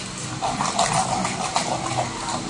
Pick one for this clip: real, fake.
real